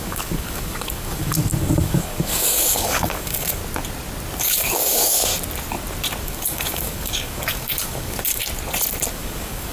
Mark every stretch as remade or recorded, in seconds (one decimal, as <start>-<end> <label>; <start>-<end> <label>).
0.0-3.6 remade; 3.6-4.4 recorded; 4.4-5.3 remade; 5.3-6.2 recorded; 6.2-8.4 remade; 8.4-9.1 recorded; 9.1-9.7 remade